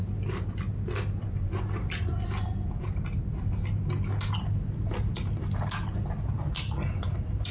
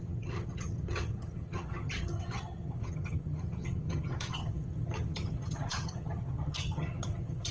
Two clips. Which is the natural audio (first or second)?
first